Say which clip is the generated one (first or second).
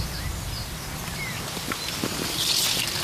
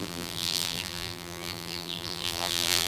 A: second